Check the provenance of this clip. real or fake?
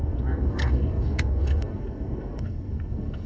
fake